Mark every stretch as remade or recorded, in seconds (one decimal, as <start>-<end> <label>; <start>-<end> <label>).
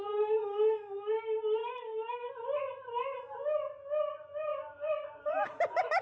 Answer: 0.0-1.6 recorded; 1.6-2.3 remade; 2.3-6.0 recorded